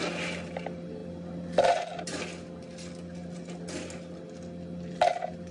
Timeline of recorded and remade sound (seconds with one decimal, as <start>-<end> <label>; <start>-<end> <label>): 0.0-5.5 recorded